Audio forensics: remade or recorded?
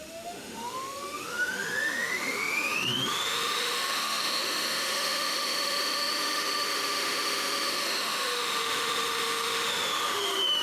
remade